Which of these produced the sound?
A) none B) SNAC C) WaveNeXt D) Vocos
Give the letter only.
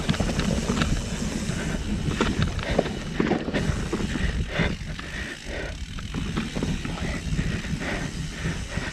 A